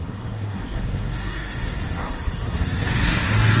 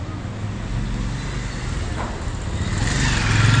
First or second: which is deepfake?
first